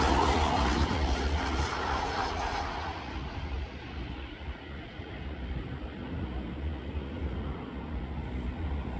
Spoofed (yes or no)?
yes